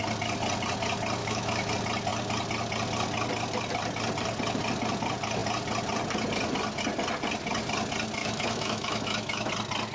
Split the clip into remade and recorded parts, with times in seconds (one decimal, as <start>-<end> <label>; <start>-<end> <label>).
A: 0.0-1.2 recorded; 1.2-1.7 remade; 1.7-8.2 recorded; 8.2-9.5 remade; 9.5-9.9 recorded

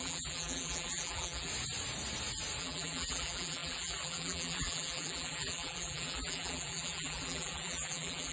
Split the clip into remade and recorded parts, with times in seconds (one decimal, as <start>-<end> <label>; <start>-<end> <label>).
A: 0.0-1.5 remade; 1.5-2.6 recorded; 2.6-8.3 remade